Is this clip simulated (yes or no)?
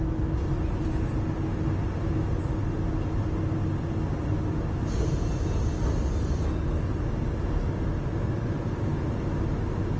no